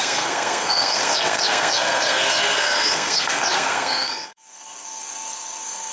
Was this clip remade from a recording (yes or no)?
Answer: yes